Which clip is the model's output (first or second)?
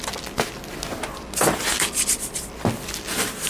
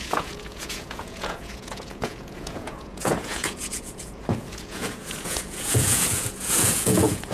second